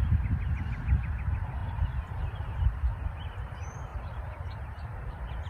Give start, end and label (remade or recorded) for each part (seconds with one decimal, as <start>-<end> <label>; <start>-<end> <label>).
0.0-1.6 recorded; 1.6-2.6 remade; 2.6-3.9 recorded; 3.9-5.5 remade